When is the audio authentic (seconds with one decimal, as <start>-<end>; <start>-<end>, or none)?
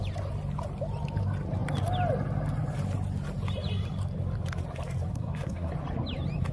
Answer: 0.0-5.1; 5.7-6.5